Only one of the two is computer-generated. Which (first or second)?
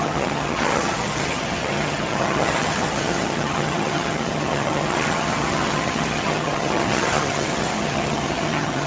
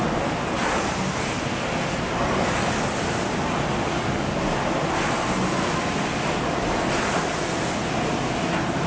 first